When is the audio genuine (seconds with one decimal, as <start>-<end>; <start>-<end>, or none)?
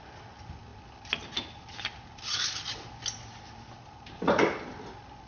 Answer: 0.0-5.3